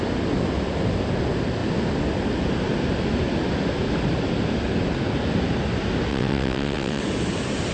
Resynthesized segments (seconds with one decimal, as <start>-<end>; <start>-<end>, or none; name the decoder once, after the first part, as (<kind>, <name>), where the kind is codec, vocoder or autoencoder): 6.1-7.0 (vocoder, WaveNeXt)